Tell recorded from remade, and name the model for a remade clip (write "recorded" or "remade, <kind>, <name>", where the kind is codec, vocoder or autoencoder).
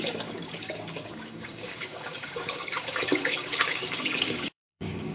remade, codec, DAC